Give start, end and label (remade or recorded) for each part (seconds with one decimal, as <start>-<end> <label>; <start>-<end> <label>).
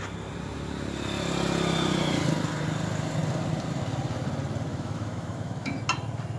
0.0-4.7 recorded; 4.7-5.7 remade; 5.7-6.4 recorded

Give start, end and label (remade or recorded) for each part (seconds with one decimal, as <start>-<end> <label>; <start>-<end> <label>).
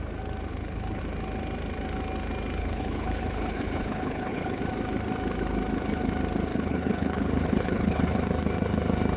0.0-0.5 recorded; 0.5-1.0 remade; 1.0-2.6 recorded; 2.6-4.6 remade; 4.6-6.5 recorded; 6.5-8.2 remade; 8.2-9.2 recorded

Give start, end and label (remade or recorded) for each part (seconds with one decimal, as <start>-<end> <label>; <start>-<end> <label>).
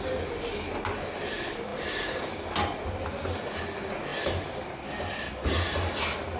0.0-6.4 recorded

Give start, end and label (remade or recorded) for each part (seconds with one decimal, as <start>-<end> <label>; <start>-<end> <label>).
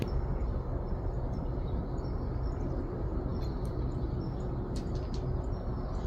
0.0-6.1 recorded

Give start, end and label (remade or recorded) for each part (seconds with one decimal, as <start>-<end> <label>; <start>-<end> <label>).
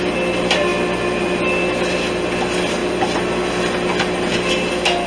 0.0-5.1 recorded